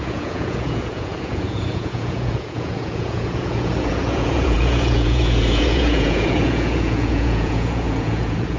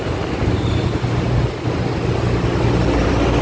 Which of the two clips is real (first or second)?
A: second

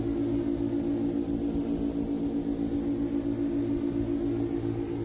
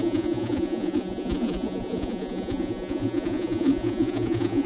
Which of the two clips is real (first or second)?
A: first